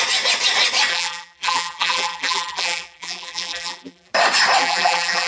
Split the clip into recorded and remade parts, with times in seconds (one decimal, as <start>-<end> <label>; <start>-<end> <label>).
0.0-0.9 recorded; 0.9-4.1 remade; 4.1-4.6 recorded; 4.6-5.3 remade